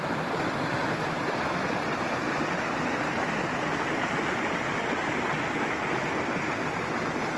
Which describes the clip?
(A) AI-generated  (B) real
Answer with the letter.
B